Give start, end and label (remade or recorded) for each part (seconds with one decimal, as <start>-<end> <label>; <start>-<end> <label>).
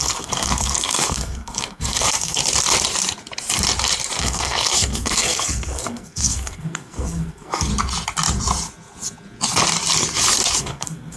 0.0-2.4 remade; 2.4-4.2 recorded; 4.2-7.7 remade; 7.7-10.6 recorded; 10.6-11.2 remade